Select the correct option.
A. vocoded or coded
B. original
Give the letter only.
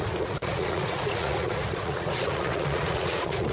A